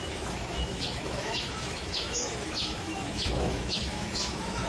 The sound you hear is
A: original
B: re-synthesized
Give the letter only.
B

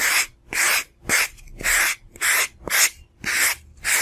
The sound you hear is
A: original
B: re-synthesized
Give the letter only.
A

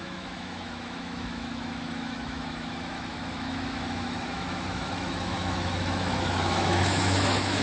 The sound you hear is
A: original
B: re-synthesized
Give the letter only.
B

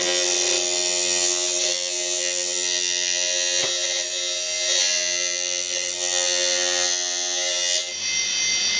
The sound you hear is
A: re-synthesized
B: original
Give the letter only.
B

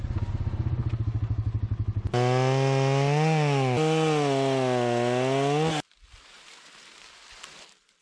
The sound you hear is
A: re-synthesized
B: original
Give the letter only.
B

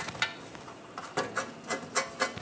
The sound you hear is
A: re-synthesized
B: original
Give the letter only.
B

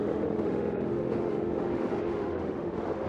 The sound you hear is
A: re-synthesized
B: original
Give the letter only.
A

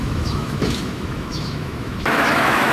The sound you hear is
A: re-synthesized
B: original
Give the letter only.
A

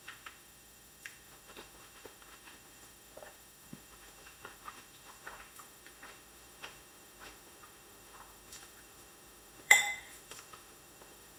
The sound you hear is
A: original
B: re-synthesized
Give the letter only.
B